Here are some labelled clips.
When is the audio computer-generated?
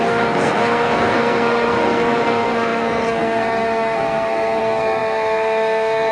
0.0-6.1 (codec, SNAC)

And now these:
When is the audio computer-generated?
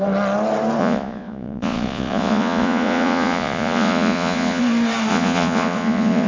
0.8-4.6 (vocoder, Vocos); 5.1-6.3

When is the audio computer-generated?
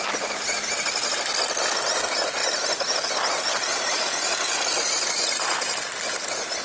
none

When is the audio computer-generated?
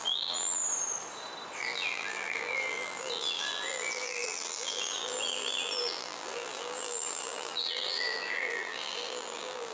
0.0-0.6 (vocoder, BigVGAN v2); 1.6-9.7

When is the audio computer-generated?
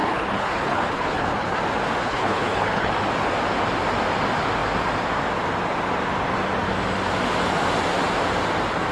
0.0-1.6 (codec, HILCodec); 2.0-2.9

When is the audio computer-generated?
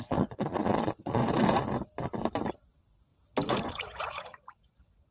0.0-1.2 (vocoder, Vocos); 2.5-3.1; 3.6-5.1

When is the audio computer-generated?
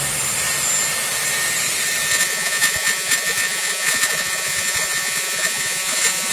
2.1-6.3 (vocoder, Vocos)